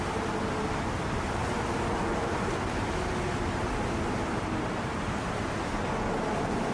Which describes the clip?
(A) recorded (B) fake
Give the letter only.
A